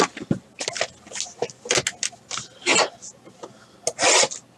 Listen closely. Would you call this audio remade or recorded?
recorded